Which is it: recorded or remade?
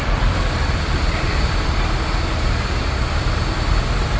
remade